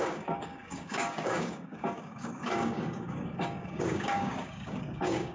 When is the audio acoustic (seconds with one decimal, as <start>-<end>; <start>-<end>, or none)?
none